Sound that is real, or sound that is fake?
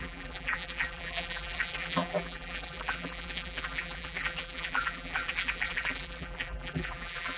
fake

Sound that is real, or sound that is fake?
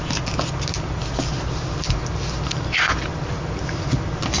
real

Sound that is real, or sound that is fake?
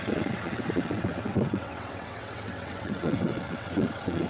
fake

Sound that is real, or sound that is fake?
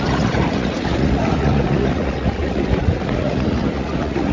fake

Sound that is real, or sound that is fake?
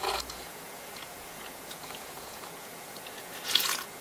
fake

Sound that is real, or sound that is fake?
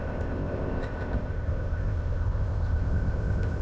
fake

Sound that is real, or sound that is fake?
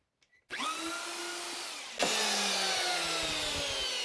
real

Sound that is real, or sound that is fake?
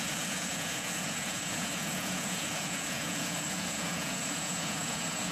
fake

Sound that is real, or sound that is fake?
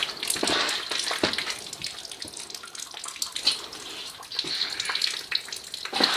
real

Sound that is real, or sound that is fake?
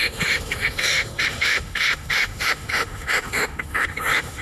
fake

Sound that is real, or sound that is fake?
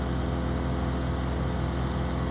real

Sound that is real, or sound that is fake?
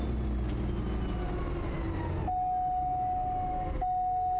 real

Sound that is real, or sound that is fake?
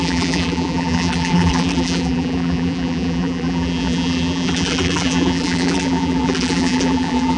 fake